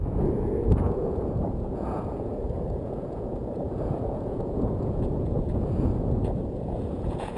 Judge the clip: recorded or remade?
remade